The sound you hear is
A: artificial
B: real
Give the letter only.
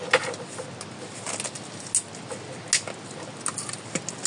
B